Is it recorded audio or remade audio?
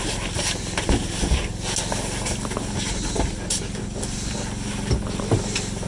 recorded